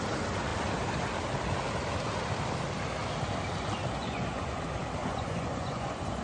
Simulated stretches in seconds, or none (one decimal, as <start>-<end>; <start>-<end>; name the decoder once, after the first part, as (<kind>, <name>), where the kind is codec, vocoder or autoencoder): 4.0-4.6 (vocoder, Vocos); 5.0-6.2